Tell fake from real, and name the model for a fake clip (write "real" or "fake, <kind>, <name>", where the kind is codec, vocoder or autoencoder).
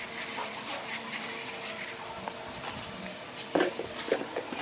real